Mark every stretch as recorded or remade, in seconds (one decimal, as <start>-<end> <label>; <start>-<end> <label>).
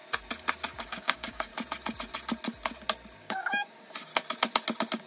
0.0-0.8 recorded; 0.8-1.5 remade; 1.5-3.2 recorded; 3.2-4.1 remade; 4.1-5.1 recorded